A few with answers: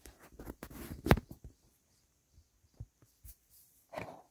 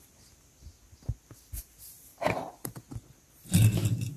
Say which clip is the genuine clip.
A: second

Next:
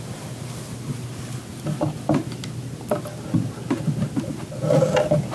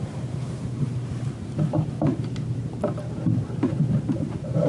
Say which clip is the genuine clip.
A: first